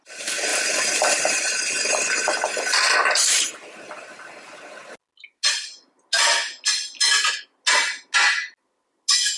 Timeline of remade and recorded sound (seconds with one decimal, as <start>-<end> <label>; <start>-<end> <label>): 0.0-0.5 recorded; 0.5-1.6 remade; 1.6-3.0 recorded; 3.0-3.5 remade; 3.5-9.4 recorded